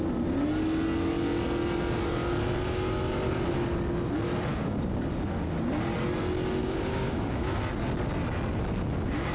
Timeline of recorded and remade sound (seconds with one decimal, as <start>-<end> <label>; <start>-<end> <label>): 0.0-4.5 recorded; 4.5-5.0 remade; 5.0-6.6 recorded; 6.6-7.6 remade; 7.6-9.3 recorded